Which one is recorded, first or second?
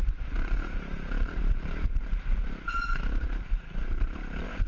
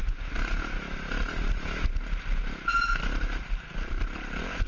second